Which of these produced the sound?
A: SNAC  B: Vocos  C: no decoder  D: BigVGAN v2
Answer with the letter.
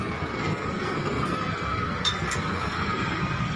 A